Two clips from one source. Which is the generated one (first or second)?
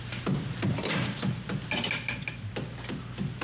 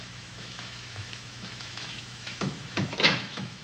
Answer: second